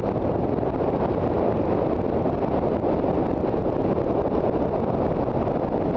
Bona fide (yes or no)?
yes